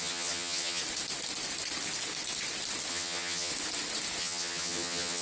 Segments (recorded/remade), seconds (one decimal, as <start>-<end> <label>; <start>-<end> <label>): 0.0-0.8 remade; 0.8-2.9 recorded; 2.9-3.5 remade; 3.5-4.2 recorded; 4.2-5.2 remade